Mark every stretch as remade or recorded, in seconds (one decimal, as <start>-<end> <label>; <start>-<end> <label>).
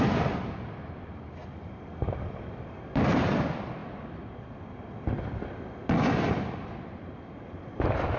0.0-8.2 recorded